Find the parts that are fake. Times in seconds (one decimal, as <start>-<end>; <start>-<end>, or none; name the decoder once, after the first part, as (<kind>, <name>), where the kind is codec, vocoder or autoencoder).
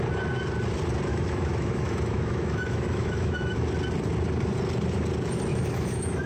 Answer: 1.1-3.7 (autoencoder, DAC-VAE); 5.5-6.3